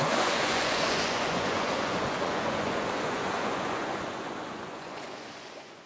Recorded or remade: remade